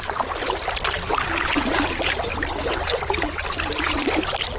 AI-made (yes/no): no